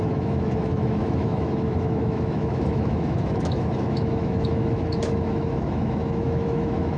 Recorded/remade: remade